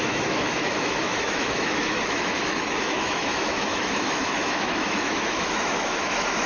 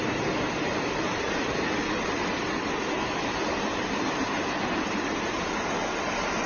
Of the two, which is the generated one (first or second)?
first